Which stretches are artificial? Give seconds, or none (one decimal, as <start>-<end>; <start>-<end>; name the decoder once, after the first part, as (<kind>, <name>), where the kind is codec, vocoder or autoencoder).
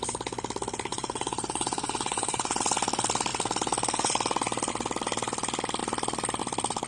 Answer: 0.9-2.6 (vocoder, Vocos)